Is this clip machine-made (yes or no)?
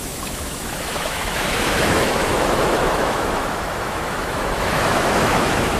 yes